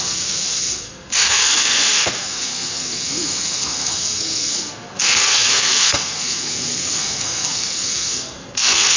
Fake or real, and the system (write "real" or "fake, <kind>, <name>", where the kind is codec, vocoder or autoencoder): fake, codec, SNAC